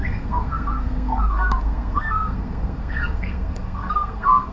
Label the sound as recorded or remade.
remade